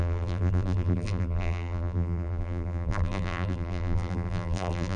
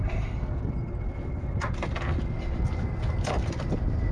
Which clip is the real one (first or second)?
second